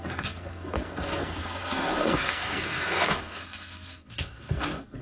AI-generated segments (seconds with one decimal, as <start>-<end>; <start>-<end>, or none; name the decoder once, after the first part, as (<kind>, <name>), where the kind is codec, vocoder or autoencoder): 0.0-5.0 (codec, SNAC)